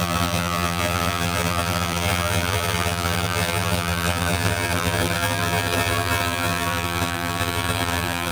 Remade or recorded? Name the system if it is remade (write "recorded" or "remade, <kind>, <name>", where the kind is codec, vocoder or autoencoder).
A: remade, vocoder, BigVGAN v2